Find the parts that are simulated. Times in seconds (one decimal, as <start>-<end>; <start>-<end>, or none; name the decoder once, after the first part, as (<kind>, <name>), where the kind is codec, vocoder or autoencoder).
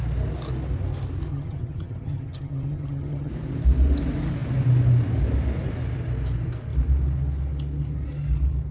1.3-3.3 (vocoder, HiFi-GAN)